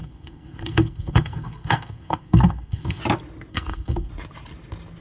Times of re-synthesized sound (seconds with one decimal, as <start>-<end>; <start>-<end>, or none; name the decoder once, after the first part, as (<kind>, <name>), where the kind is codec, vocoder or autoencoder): 0.0-3.0 (codec, SNAC); 3.5-4.1